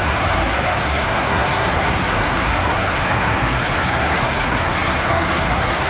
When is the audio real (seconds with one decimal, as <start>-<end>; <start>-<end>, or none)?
none